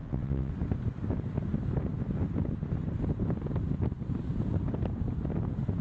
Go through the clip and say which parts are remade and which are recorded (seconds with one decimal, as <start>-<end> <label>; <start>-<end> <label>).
0.0-0.5 remade; 0.5-5.8 recorded